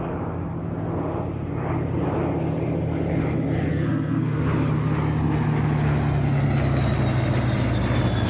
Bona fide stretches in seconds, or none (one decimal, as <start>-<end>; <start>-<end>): 0.0-3.7; 4.4-8.3

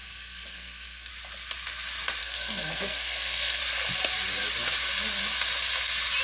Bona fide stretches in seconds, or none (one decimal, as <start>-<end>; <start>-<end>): 1.1-2.2; 3.6-6.2